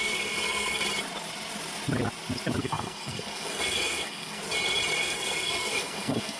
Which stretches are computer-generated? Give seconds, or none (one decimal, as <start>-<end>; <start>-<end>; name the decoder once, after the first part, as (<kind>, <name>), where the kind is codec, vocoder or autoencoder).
0.0-0.8 (codec, SNAC); 2.6-4.4; 5.0-6.4